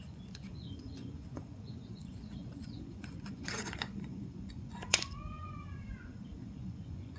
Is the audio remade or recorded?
remade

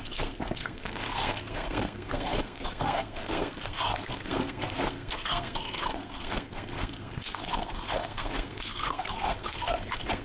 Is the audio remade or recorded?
remade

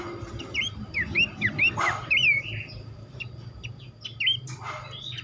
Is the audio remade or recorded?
recorded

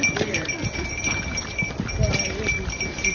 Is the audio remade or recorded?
recorded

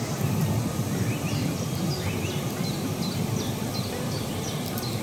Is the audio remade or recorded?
recorded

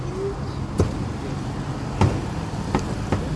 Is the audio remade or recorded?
recorded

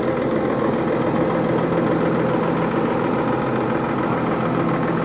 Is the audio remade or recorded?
recorded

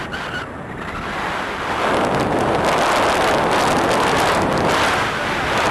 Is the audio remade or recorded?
recorded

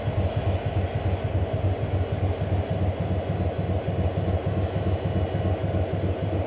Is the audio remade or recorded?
recorded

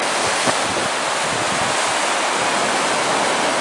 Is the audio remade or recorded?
recorded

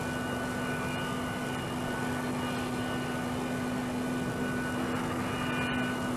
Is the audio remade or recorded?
recorded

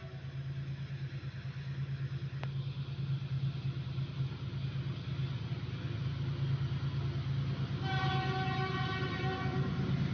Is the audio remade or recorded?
recorded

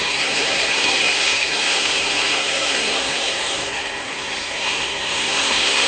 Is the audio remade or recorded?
remade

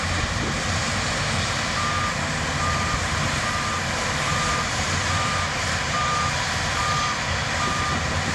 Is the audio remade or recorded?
remade